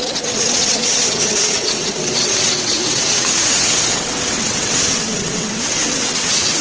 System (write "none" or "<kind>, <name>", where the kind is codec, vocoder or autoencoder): vocoder, WaveNeXt